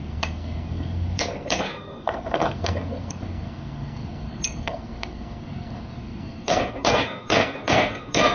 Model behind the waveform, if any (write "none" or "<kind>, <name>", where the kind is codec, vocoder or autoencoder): codec, SNAC